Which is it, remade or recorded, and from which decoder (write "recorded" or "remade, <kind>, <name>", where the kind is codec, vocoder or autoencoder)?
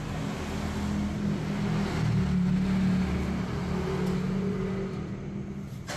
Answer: recorded